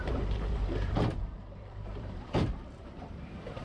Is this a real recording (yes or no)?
no